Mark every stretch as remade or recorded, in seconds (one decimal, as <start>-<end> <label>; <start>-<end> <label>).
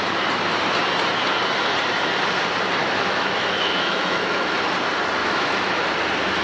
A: 0.0-2.8 recorded; 2.8-4.6 remade; 4.6-5.2 recorded; 5.2-5.7 remade; 5.7-6.4 recorded